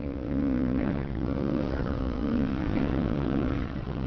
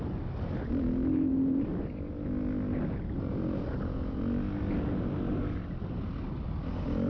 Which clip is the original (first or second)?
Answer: second